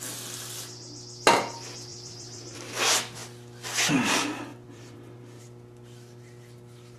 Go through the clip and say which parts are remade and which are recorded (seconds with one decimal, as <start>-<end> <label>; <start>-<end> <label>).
0.0-1.9 recorded; 1.9-2.7 remade; 2.7-4.5 recorded; 4.5-5.4 remade; 5.4-7.0 recorded